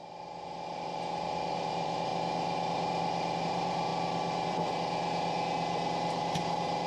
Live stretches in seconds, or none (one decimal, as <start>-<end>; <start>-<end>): 0.0-1.7; 2.1-3.4; 3.9-6.9